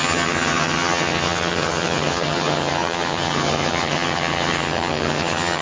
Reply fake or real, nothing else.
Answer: fake